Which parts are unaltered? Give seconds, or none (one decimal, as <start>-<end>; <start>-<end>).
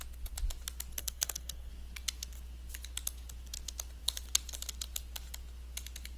0.0-1.0; 1.7-6.2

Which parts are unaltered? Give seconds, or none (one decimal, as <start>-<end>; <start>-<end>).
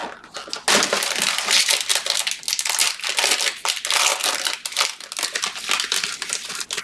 0.0-6.8